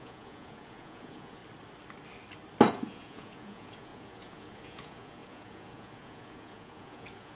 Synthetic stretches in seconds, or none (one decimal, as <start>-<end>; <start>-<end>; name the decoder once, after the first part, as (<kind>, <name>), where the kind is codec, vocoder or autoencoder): 0.0-1.4 (vocoder, Vocos); 2.7-7.3